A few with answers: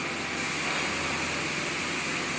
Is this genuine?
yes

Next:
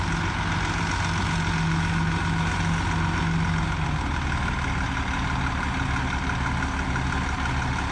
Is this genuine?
yes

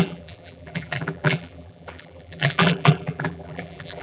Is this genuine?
no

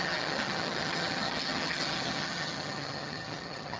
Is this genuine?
no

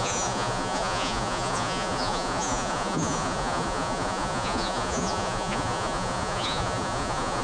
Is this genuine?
no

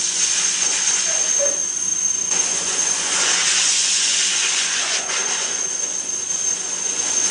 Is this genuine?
no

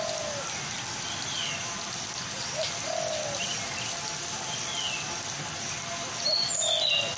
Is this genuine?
yes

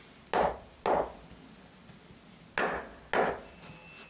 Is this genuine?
yes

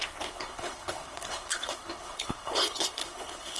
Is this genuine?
no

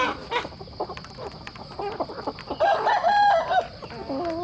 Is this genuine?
yes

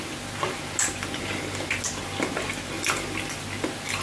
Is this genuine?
yes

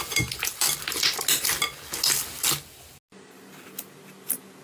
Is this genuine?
yes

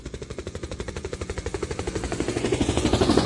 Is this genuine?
no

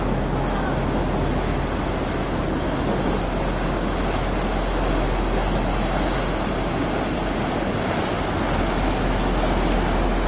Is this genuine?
yes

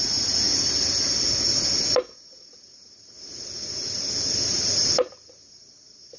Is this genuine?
yes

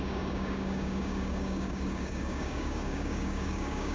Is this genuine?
no